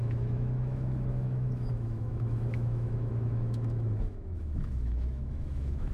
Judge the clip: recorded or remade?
remade